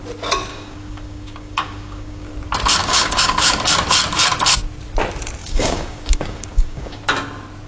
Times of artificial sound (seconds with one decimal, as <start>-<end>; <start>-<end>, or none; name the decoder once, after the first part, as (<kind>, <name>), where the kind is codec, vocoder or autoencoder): 0.5-2.3 (codec, DAC); 2.8-3.5; 5.4-7.0